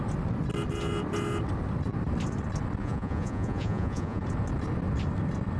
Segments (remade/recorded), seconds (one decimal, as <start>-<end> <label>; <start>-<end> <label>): 0.0-2.8 recorded; 2.8-4.2 remade; 4.2-5.6 recorded